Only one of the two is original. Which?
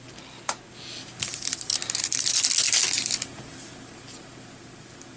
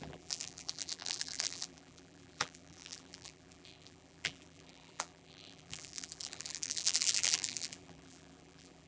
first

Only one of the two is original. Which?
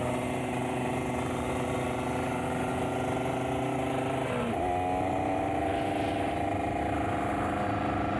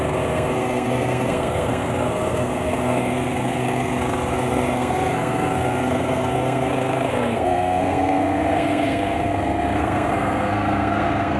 first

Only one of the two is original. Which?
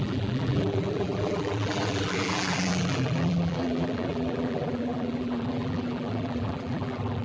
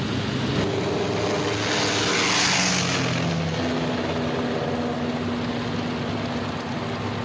second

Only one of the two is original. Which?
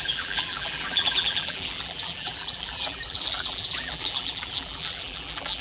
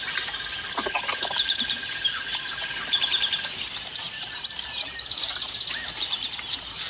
second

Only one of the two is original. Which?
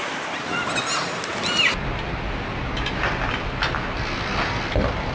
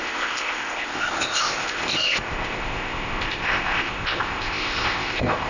first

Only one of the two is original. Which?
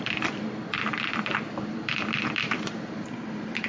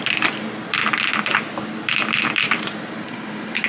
second